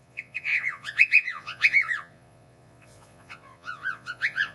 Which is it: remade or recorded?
remade